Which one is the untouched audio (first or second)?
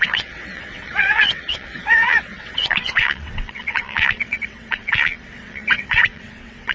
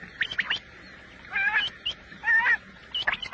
second